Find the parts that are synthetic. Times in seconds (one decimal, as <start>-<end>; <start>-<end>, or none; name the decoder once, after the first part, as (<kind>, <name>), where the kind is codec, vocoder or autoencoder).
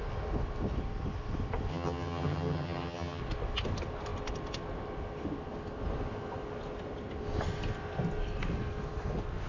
1.7-3.2 (vocoder, HiFi-GAN)